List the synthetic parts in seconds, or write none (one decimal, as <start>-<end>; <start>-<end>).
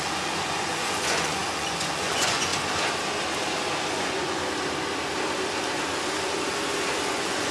0.0-2.5; 3.9-4.4; 7.1-7.5